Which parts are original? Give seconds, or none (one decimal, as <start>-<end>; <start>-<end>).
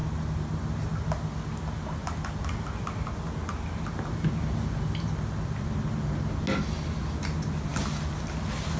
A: 0.0-8.8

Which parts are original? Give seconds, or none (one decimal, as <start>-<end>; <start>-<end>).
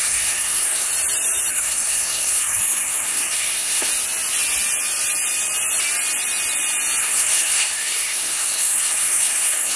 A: 0.9-1.5; 3.9-7.0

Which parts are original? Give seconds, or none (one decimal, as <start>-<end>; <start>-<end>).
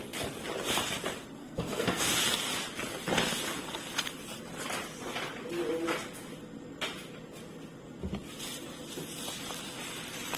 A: 0.0-1.4; 2.1-10.4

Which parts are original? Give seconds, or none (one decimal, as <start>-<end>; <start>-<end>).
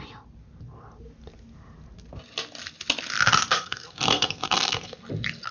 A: 0.0-3.5; 5.0-5.5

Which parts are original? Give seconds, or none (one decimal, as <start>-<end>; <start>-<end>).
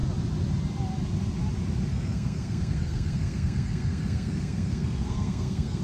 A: 0.0-1.9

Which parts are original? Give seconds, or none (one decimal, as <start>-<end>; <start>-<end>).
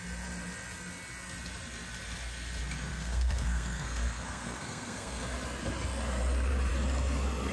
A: 0.0-2.9; 5.2-7.5